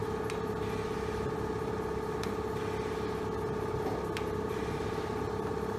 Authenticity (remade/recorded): recorded